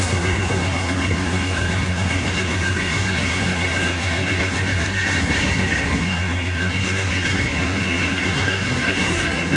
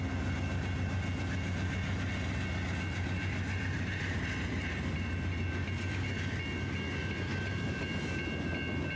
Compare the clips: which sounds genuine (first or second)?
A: second